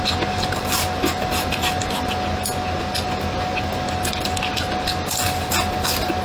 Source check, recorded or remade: recorded